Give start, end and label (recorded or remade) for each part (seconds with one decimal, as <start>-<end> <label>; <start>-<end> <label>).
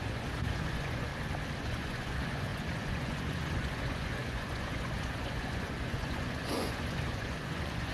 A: 0.0-1.1 remade; 1.1-1.6 recorded; 1.6-7.9 remade